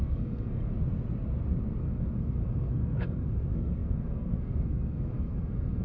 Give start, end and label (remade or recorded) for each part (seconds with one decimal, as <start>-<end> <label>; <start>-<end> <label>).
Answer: 0.0-0.7 remade; 0.7-1.8 recorded; 1.8-5.8 remade